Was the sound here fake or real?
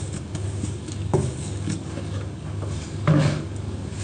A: fake